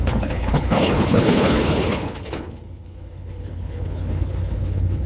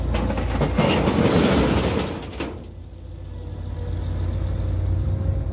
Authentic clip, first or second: second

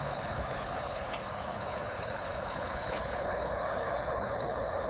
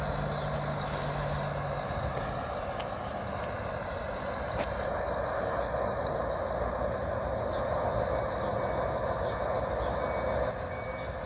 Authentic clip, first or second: second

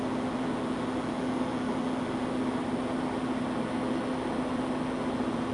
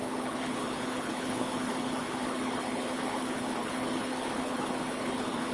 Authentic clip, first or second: first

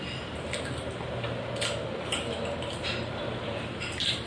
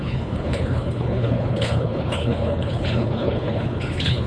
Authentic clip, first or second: first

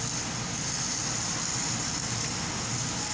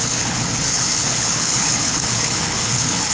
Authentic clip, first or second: first